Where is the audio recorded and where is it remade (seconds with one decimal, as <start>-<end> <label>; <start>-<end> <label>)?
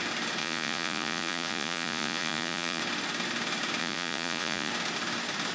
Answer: 0.0-0.4 recorded; 0.4-2.8 remade; 2.8-3.8 recorded; 3.8-4.7 remade; 4.7-5.5 recorded